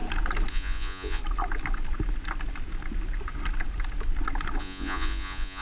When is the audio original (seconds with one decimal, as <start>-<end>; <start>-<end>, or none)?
0.0-0.5; 1.2-4.6